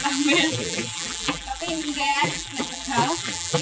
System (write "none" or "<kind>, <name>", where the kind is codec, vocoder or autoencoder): vocoder, BigVGAN v2